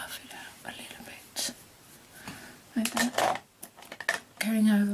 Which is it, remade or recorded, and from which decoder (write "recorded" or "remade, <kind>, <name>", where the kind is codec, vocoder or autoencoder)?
recorded